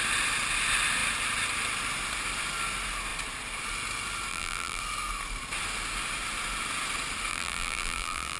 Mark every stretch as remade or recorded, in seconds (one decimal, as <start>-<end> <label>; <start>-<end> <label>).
0.0-4.3 recorded; 4.3-4.8 remade; 4.8-7.3 recorded; 7.3-8.4 remade